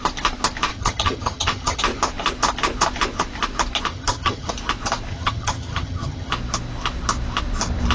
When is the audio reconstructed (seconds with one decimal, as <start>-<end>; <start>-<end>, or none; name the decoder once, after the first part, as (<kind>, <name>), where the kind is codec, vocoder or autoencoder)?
0.7-1.8 (vocoder, HiFi-GAN); 3.9-4.5; 5.1-6.3